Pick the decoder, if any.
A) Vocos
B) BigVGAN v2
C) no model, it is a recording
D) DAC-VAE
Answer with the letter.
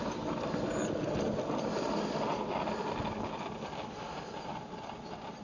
C